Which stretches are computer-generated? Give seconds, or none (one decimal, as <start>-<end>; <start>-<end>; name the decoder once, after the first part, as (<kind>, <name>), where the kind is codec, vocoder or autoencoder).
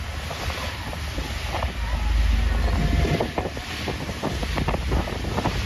4.4-5.7 (vocoder, BigVGAN v2)